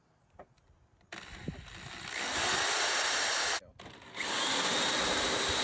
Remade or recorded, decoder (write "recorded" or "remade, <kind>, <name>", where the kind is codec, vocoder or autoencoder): recorded